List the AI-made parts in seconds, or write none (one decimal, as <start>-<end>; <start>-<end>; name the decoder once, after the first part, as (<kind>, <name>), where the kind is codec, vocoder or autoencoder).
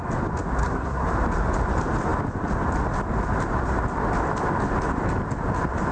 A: 0.6-1.1 (codec, SNAC)